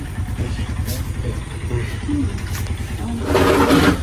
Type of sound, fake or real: real